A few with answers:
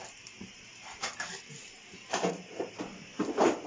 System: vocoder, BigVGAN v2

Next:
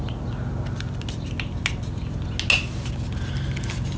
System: none